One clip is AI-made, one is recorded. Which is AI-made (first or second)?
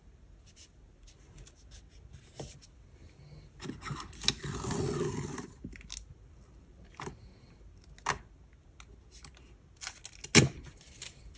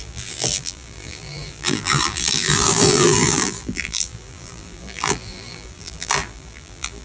second